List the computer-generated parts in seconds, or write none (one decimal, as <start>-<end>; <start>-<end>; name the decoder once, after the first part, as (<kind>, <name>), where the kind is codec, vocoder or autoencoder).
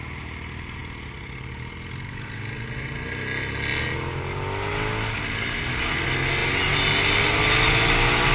none